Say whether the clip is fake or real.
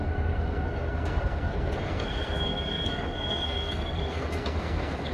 fake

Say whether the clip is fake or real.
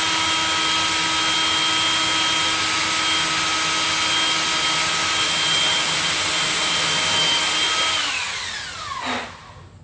real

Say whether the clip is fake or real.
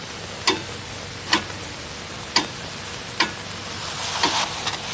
real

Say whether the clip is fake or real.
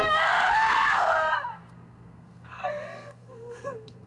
fake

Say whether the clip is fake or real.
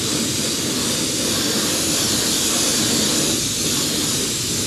real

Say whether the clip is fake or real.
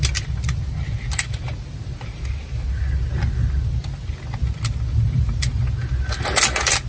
real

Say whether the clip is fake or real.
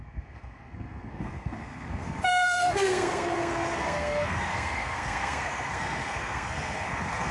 fake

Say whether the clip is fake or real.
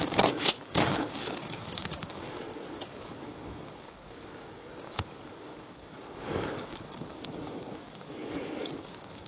fake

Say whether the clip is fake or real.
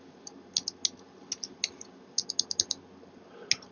real